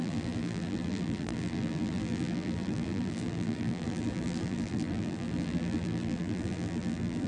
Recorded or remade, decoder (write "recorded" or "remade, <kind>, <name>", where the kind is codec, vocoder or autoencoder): remade, vocoder, BigVGAN v2